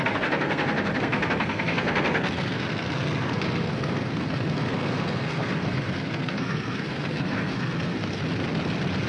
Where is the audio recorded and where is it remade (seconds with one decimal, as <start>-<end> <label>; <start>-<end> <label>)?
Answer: 0.0-8.2 remade; 8.2-9.1 recorded